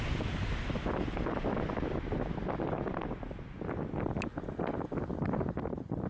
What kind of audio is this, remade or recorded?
recorded